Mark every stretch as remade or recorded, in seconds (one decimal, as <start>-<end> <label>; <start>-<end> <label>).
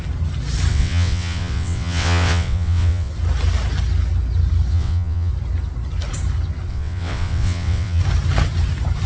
0.0-0.7 recorded; 0.7-3.1 remade; 3.1-4.7 recorded; 4.7-5.3 remade; 5.3-6.7 recorded; 6.7-8.0 remade; 8.0-9.1 recorded